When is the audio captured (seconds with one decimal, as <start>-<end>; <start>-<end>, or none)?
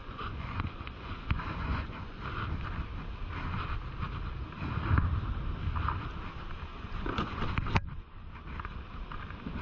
2.2-6.7; 7.4-9.6